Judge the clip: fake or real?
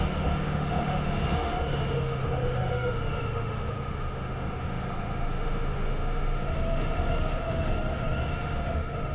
fake